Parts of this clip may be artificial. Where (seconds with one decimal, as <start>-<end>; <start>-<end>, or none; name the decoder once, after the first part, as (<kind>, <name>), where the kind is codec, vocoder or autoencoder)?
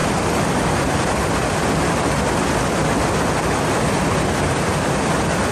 0.0-1.3 (vocoder, BigVGAN v2)